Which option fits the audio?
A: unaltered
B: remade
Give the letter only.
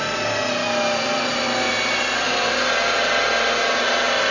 A